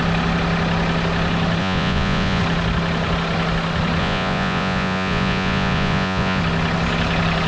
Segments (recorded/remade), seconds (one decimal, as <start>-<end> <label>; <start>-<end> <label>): 0.0-1.6 recorded; 1.6-2.4 remade; 2.4-4.0 recorded; 4.0-6.4 remade; 6.4-7.5 recorded